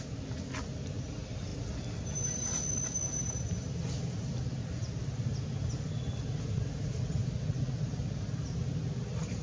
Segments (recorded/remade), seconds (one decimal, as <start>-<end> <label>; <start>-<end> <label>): 0.0-9.4 recorded